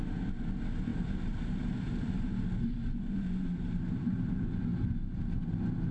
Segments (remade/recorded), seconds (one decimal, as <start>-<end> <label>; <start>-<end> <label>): 0.0-0.9 recorded; 0.9-4.3 remade; 4.3-5.9 recorded